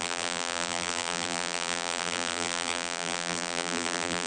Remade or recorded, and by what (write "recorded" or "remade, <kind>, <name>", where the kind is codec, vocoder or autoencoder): remade, vocoder, BigVGAN v2